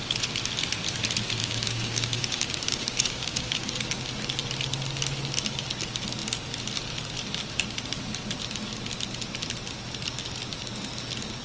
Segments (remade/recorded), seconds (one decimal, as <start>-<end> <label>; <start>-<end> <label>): 0.0-1.4 recorded; 1.4-3.7 remade; 3.7-11.4 recorded